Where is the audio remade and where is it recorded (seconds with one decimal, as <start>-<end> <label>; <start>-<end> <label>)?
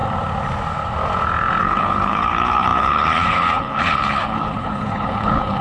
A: 0.0-1.6 recorded; 1.6-5.6 remade